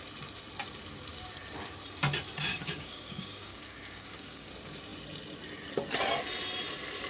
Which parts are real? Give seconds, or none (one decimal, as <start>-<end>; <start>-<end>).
0.0-2.5; 4.5-7.1

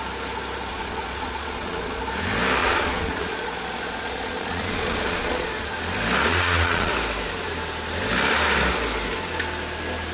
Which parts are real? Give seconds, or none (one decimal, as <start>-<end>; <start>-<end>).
0.0-0.7; 2.0-2.6; 5.7-6.3; 6.9-10.1